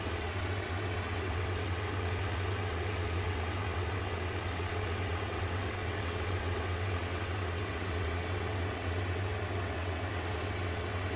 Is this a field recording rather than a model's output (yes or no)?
no